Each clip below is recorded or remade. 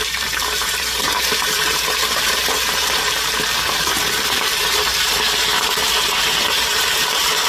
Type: remade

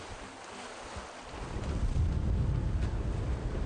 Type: recorded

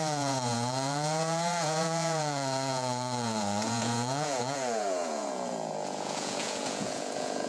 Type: remade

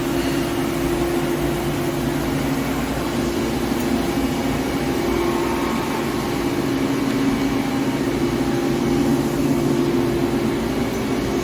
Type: recorded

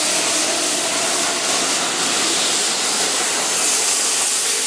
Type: recorded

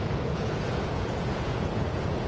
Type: remade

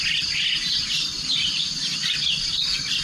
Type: recorded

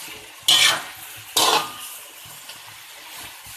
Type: recorded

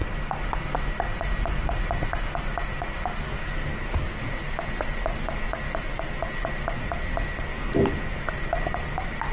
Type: recorded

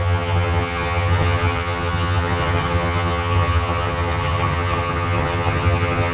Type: remade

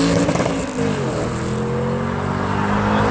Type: recorded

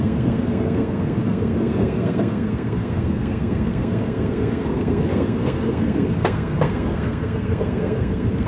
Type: remade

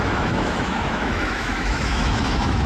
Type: remade